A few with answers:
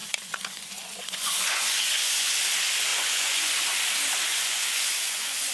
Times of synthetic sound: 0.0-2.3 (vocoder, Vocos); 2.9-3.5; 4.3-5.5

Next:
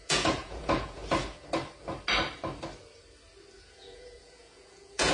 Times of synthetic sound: 0.0-1.0 (vocoder, Vocos); 3.6-5.1

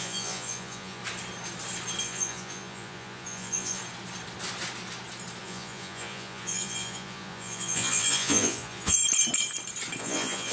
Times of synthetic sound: 0.0-1.0 (vocoder, Vocos); 2.0-3.8; 5.4-9.0; 10.0-10.5

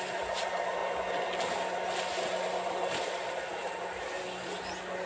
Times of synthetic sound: none

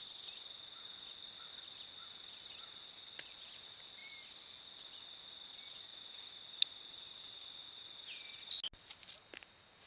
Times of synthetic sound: none

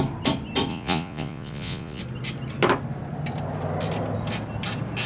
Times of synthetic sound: 0.7-2.0 (vocoder, Vocos)